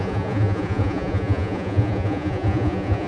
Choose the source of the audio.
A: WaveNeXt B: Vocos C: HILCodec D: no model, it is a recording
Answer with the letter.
B